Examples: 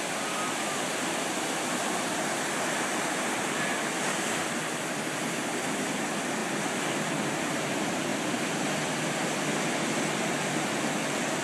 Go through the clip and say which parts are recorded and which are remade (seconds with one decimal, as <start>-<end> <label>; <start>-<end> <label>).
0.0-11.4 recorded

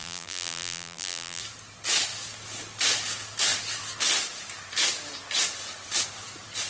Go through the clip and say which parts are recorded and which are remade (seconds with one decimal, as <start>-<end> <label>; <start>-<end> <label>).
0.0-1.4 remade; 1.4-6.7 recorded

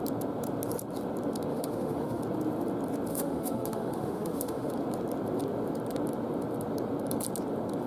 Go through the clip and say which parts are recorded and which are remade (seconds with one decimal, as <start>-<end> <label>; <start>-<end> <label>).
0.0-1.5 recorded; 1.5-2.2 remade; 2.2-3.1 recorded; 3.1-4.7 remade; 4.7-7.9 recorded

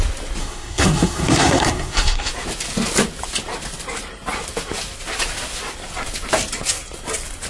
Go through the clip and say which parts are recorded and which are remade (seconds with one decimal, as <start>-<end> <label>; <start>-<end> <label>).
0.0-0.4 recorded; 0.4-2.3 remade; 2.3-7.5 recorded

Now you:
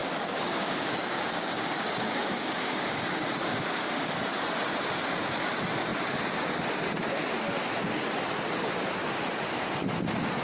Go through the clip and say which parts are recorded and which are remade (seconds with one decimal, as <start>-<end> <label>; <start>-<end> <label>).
0.0-4.1 remade; 4.1-10.4 recorded